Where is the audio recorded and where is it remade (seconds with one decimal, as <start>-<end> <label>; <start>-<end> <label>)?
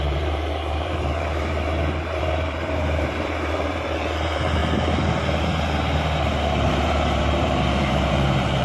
0.0-4.6 remade; 4.6-6.7 recorded; 6.7-8.6 remade